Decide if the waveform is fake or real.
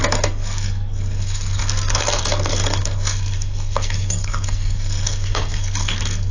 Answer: fake